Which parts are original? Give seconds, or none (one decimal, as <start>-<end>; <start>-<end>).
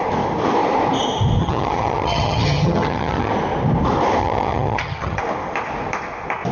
0.0-1.4; 3.3-4.2; 5.2-6.5